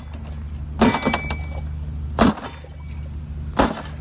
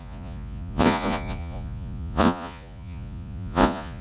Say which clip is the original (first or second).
first